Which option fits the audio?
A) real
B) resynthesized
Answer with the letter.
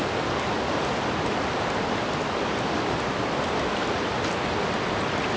A